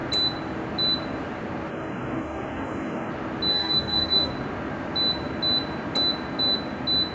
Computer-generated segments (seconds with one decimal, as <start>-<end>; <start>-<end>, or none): 1.7-3.1; 3.5-4.3

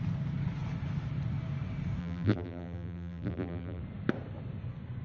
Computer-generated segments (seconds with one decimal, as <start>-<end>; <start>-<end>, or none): 2.0-3.8

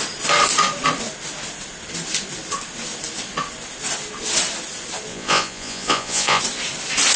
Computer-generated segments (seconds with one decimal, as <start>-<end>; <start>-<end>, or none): 5.1-6.4

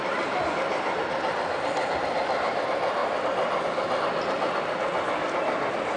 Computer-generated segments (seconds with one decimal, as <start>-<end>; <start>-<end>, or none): none